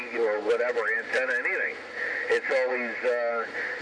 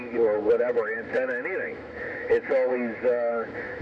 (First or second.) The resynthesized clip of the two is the second